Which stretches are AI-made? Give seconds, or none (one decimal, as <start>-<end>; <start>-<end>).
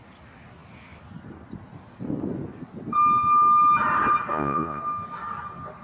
4.3-4.8